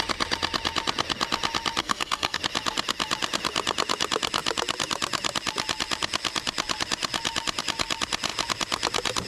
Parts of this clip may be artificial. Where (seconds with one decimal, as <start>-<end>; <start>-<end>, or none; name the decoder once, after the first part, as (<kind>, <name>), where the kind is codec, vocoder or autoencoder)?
1.8-2.4 (codec, SNAC)